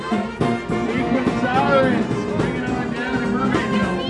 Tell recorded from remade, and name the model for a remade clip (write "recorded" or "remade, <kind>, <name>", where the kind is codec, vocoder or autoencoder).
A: recorded